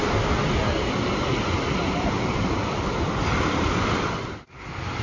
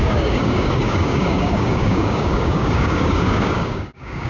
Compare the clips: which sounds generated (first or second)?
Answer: second